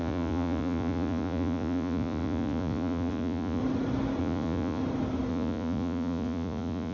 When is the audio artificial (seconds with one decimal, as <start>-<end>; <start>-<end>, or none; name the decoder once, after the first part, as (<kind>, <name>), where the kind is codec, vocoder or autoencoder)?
0.0-3.6 (vocoder, Vocos); 4.2-4.8; 5.3-6.9